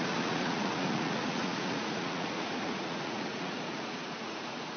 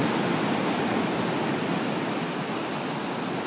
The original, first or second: second